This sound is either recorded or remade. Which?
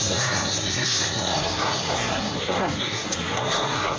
remade